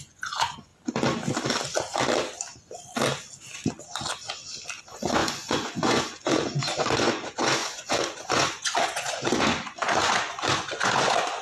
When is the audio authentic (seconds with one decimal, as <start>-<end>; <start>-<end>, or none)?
0.7-4.8